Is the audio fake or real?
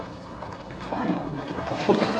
fake